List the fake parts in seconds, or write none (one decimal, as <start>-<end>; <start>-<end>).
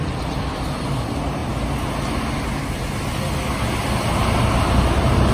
none